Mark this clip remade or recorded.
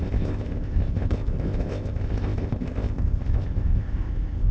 remade